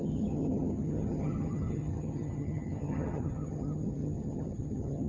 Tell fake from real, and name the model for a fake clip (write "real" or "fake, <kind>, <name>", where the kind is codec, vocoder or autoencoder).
fake, vocoder, HiFi-GAN